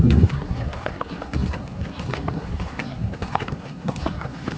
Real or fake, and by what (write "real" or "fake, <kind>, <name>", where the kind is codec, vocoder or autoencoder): fake, codec, SNAC